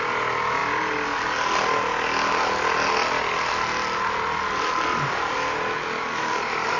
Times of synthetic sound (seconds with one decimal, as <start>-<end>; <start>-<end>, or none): none